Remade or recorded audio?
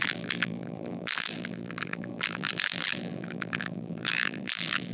remade